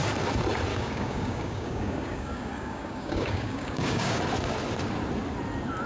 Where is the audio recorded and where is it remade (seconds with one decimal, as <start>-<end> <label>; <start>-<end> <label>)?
0.0-0.7 recorded; 0.7-4.2 remade; 4.2-5.9 recorded